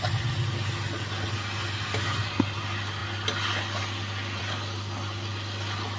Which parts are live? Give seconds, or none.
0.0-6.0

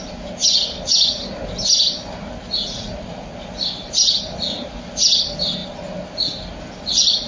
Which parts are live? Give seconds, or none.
0.0-2.5; 3.3-7.3

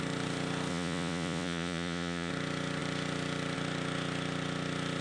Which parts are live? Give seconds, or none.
0.0-0.7; 2.3-5.0

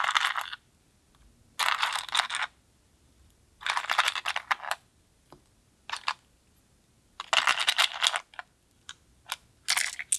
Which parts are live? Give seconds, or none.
0.0-10.2